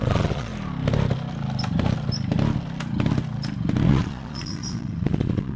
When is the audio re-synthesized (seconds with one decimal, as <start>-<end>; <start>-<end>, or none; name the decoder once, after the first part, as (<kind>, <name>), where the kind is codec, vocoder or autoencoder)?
0.0-0.5 (vocoder, Vocos); 3.9-5.6